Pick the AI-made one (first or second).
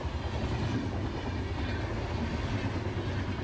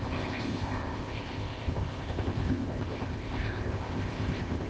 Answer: second